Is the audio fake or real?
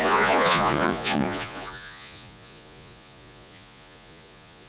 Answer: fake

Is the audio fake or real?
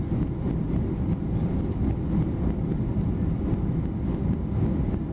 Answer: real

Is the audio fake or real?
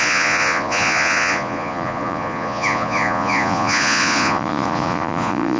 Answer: fake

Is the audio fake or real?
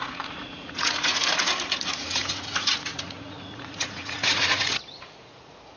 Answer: fake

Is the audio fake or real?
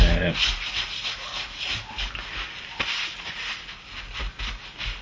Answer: real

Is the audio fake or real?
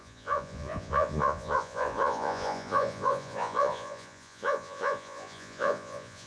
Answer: fake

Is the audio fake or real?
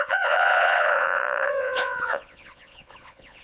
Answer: fake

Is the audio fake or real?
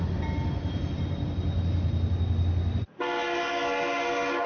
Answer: real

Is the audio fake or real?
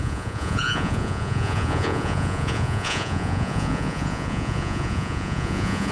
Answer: fake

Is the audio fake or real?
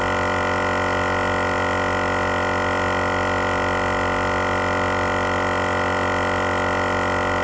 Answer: real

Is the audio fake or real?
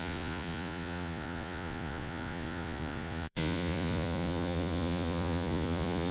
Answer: fake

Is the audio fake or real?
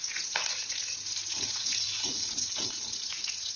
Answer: fake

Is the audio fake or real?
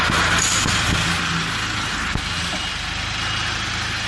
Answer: real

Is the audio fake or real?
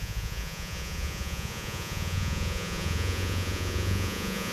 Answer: fake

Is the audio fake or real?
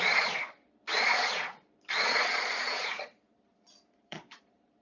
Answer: fake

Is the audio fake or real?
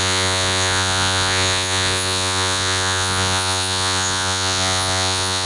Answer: fake